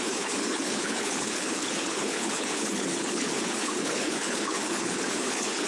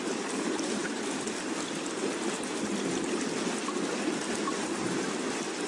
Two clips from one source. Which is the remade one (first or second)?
first